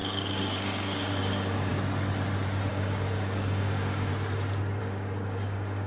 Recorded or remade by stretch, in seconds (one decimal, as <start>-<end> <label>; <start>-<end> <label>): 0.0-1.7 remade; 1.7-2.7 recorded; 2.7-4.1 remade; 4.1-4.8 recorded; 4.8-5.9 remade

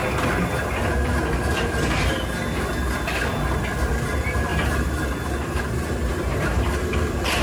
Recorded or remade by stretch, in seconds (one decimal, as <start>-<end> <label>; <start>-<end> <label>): 0.0-0.9 recorded; 0.9-2.7 remade; 2.7-3.9 recorded; 3.9-7.4 remade

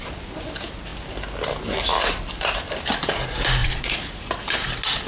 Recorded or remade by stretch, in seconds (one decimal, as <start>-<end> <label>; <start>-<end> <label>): 0.0-3.6 recorded; 3.6-4.3 remade; 4.3-5.1 recorded

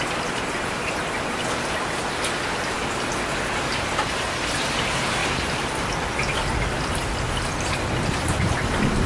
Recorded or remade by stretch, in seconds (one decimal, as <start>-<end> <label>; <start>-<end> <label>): 0.0-9.1 recorded

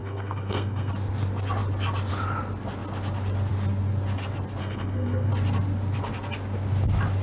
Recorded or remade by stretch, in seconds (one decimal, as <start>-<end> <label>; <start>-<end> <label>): 0.0-0.9 remade; 0.9-4.6 recorded; 4.6-5.3 remade; 5.3-7.2 recorded